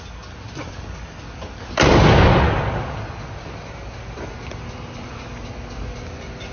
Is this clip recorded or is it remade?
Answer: recorded